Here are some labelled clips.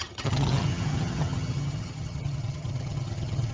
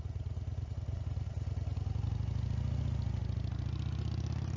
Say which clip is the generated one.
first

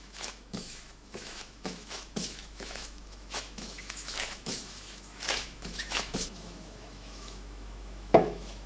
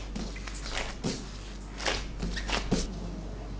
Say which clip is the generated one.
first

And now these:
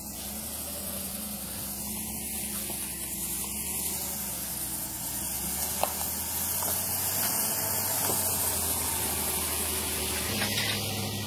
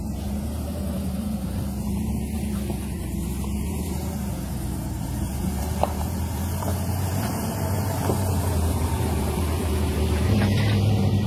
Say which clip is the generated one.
second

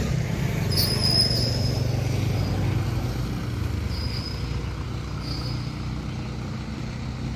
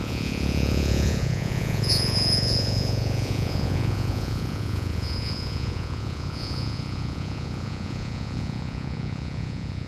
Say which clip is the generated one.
second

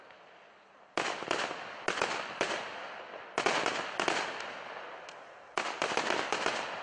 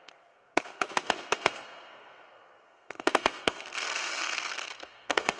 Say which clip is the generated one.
second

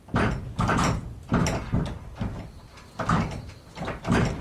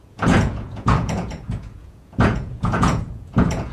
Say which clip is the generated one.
second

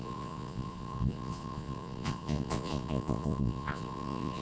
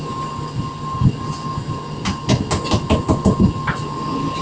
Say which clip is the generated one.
first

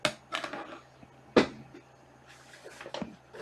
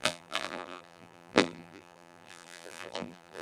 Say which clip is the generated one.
second